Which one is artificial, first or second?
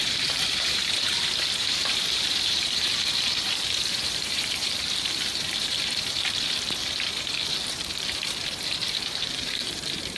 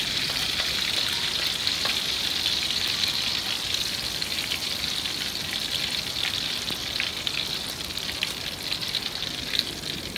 first